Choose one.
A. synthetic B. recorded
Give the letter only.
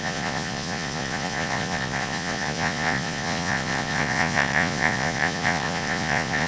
A